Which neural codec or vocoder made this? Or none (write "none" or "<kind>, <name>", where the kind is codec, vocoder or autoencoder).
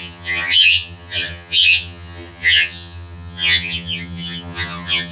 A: vocoder, HiFi-GAN